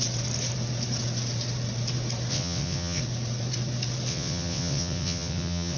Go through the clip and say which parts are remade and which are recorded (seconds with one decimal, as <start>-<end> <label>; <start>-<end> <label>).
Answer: 0.0-2.3 recorded; 2.3-3.0 remade; 3.0-4.1 recorded; 4.1-5.8 remade